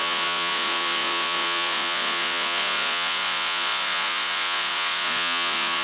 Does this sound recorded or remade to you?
remade